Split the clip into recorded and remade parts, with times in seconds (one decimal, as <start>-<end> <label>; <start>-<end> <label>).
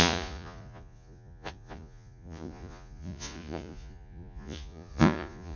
0.0-5.6 remade